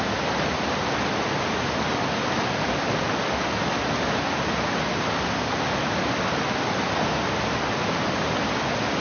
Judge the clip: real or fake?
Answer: real